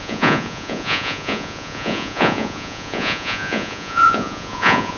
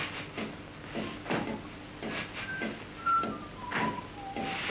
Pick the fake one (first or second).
first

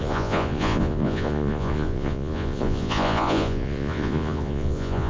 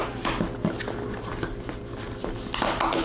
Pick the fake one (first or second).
first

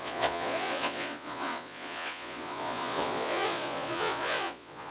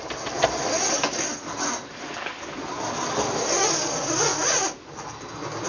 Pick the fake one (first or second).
first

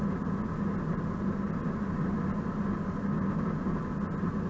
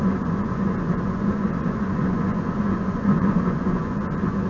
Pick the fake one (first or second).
second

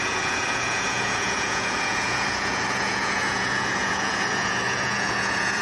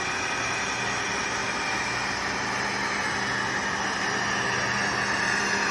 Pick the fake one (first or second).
first